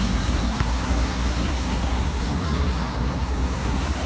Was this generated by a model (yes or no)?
yes